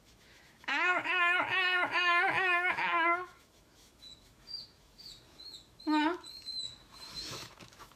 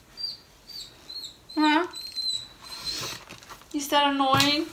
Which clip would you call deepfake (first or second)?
first